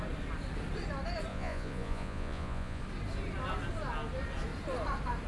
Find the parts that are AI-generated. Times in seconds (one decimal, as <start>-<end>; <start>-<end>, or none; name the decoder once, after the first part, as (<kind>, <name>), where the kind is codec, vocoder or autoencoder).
1.3-2.8 (vocoder, Vocos)

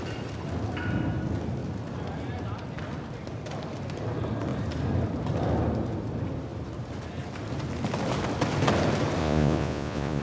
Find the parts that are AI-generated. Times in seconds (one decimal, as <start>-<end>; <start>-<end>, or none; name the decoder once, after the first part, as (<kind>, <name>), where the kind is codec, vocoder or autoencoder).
9.2-10.2 (vocoder, Vocos)

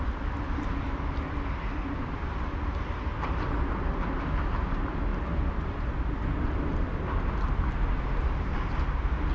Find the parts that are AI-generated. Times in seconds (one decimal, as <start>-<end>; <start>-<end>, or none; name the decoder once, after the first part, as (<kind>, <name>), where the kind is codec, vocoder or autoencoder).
5.1-6.0 (vocoder, BigVGAN v2)

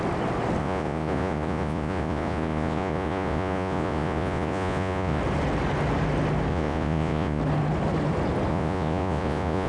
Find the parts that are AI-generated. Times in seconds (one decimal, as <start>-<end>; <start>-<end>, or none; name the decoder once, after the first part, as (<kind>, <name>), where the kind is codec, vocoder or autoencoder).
0.6-5.2 (vocoder, Vocos); 6.5-7.4; 8.5-9.7

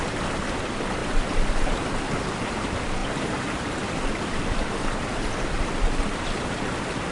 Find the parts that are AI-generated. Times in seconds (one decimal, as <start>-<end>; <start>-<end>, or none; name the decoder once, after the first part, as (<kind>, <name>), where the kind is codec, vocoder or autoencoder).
1.0-2.2 (vocoder, BigVGAN v2); 3.0-6.6

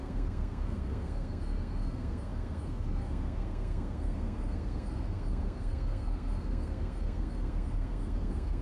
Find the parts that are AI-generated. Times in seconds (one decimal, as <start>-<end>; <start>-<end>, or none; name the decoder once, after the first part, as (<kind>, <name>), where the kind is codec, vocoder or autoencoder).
0.0-8.6 (codec, SNAC)

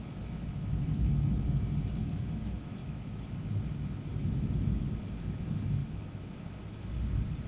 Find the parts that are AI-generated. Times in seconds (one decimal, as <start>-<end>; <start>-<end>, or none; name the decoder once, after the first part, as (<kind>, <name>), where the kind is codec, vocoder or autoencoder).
2.0-3.3 (autoencoder, DAC-VAE); 4.1-4.9; 5.8-6.3